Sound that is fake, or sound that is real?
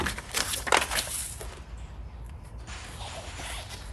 real